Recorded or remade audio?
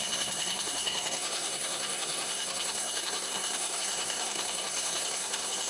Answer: remade